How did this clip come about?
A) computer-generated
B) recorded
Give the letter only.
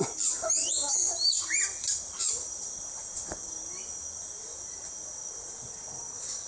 B